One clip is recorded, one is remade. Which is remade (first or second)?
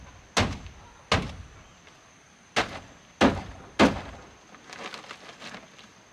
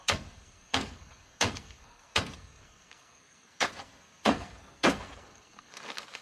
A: second